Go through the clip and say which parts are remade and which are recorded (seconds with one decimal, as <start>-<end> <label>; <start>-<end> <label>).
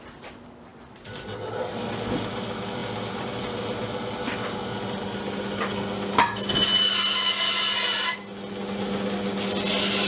0.0-0.7 recorded; 0.7-1.2 remade; 1.2-10.1 recorded